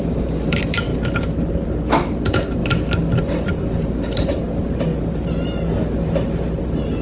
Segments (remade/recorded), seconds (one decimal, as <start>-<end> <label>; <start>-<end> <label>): 0.0-0.9 remade; 0.9-2.2 recorded; 2.2-2.6 remade; 2.6-3.2 recorded; 3.2-4.9 remade; 4.9-6.6 recorded; 6.6-7.0 remade